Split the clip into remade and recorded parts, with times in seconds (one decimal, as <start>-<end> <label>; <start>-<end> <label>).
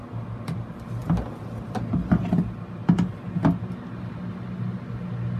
0.0-5.4 recorded